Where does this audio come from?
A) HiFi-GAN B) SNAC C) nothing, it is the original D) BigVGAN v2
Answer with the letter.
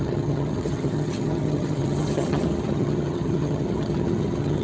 A